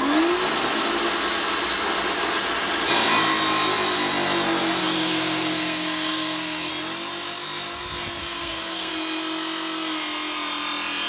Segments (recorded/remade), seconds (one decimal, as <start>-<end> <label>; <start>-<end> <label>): 0.0-4.8 recorded; 4.8-6.7 remade; 6.7-8.2 recorded; 8.2-8.9 remade; 8.9-11.1 recorded